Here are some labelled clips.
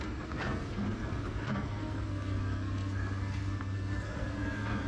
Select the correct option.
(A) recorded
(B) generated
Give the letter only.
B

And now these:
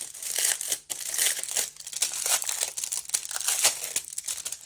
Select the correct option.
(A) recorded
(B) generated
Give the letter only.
A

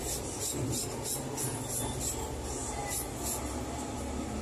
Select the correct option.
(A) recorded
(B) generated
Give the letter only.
A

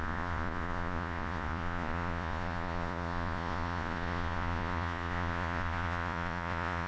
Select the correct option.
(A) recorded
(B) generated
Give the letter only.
B